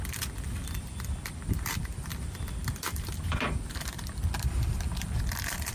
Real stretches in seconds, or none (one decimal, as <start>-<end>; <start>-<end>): none